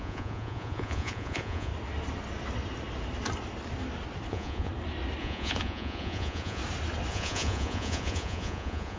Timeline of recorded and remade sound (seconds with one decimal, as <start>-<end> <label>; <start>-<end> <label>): 0.0-1.7 remade; 1.7-4.3 recorded; 4.3-4.7 remade; 4.7-5.2 recorded; 5.2-6.6 remade; 6.6-7.1 recorded; 7.1-9.0 remade